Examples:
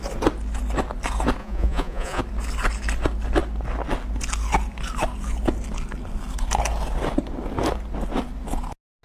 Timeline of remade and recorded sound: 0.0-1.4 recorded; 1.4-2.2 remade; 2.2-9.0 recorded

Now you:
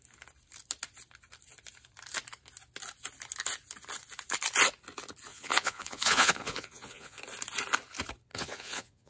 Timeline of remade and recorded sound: 0.0-5.3 recorded; 5.3-7.2 remade; 7.2-8.3 recorded; 8.3-9.1 remade

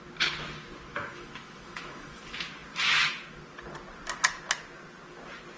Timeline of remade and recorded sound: 0.0-0.9 recorded; 0.9-2.2 remade; 2.2-5.6 recorded

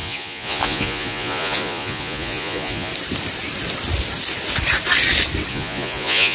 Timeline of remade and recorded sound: 0.0-2.9 remade; 2.9-5.5 recorded; 5.5-6.3 remade

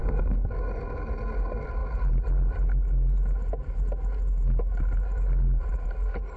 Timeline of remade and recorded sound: 0.0-0.5 remade; 0.5-6.4 recorded